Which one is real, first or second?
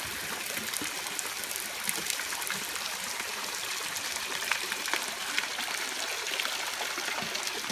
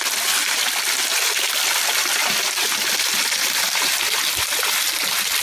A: second